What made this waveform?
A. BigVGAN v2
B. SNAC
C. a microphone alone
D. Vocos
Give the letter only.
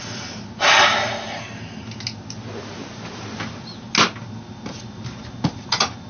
C